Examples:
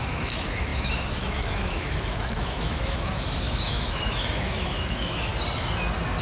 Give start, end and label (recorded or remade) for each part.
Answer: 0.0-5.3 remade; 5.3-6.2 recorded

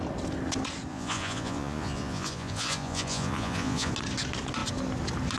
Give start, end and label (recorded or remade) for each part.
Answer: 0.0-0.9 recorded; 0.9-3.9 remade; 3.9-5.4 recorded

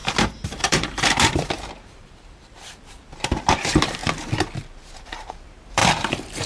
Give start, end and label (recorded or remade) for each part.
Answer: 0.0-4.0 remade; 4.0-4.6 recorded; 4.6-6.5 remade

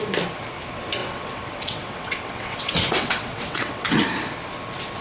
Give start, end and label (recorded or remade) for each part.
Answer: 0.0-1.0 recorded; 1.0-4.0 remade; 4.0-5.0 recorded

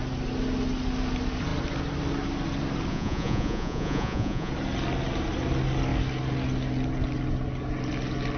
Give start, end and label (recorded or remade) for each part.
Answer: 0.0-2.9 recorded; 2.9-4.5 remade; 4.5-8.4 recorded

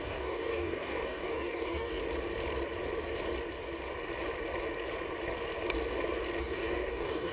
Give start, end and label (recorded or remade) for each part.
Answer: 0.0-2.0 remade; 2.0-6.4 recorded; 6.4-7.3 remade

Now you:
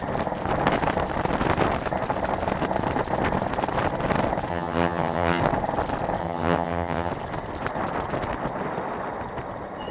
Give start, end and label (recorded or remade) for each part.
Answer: 0.0-4.5 recorded; 4.5-5.4 remade; 5.4-6.2 recorded; 6.2-7.1 remade; 7.1-9.9 recorded